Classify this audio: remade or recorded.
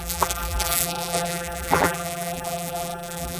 remade